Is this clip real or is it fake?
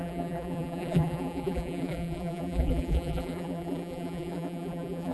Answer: fake